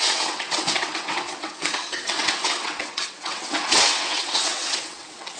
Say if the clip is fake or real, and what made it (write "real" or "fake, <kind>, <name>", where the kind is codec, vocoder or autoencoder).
fake, vocoder, WaveNeXt